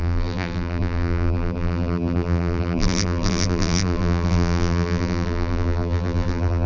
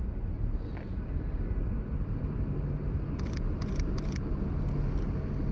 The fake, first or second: first